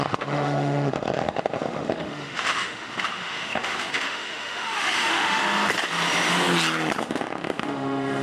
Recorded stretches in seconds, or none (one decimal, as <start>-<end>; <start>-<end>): 5.4-7.0